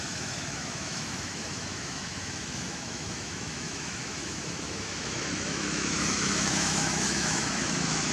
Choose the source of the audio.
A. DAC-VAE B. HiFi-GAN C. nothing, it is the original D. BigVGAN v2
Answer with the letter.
A